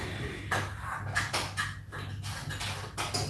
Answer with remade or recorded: recorded